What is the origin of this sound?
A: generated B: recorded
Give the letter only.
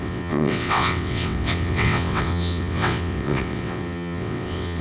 A